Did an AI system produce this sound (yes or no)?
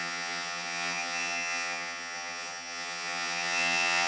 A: yes